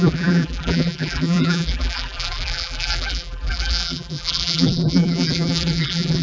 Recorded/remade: remade